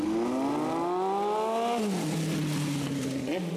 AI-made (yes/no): no